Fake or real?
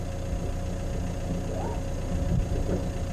real